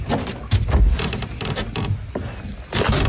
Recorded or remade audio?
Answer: recorded